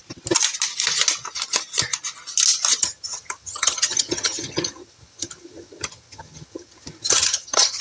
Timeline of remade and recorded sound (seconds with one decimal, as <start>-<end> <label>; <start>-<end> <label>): 0.0-2.8 recorded; 2.8-7.8 remade